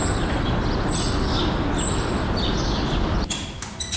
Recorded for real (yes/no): yes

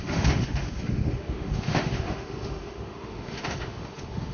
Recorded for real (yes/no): no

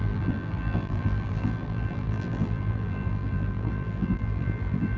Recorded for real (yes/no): no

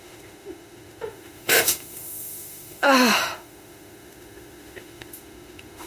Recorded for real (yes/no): no